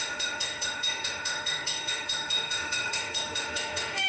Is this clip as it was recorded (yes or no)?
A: no